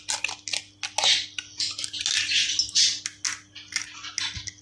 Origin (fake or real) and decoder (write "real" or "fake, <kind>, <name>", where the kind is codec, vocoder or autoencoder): real